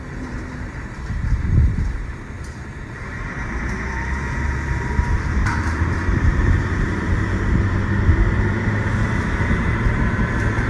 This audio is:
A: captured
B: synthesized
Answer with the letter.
B